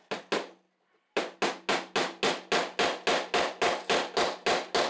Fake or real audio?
real